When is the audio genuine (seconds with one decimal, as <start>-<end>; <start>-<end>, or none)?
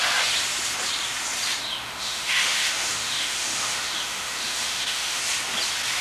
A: 0.0-1.6; 5.2-6.0